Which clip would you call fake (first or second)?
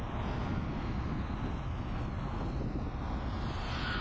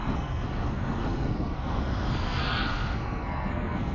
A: second